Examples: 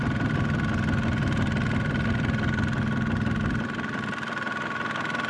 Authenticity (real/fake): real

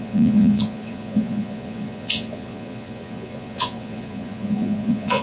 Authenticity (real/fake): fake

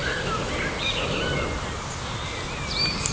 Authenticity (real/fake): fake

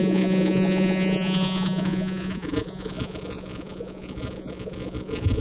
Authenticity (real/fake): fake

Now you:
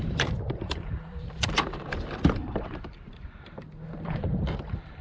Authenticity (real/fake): fake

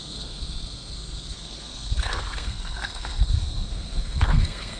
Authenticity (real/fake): fake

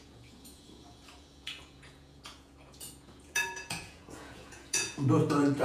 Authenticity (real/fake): fake